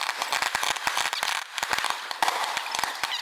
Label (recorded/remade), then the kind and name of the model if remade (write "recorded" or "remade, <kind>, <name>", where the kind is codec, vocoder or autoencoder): recorded